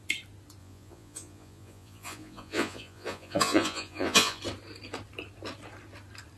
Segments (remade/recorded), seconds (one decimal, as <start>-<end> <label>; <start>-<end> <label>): 0.0-0.6 recorded; 0.6-4.4 remade; 4.4-6.4 recorded